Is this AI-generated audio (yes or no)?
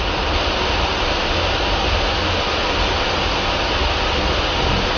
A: no